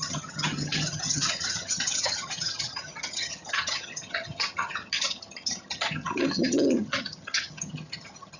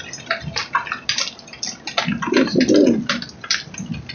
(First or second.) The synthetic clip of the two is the first